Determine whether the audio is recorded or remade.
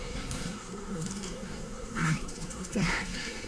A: remade